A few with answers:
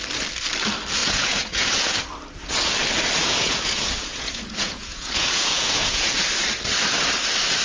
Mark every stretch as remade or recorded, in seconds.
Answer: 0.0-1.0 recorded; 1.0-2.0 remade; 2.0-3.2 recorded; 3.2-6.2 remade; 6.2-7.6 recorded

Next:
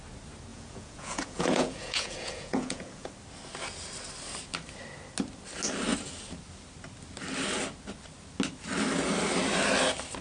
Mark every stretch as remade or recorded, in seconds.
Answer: 0.0-0.5 recorded; 0.5-3.1 remade; 3.1-10.2 recorded